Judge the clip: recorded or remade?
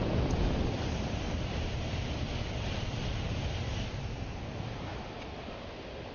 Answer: recorded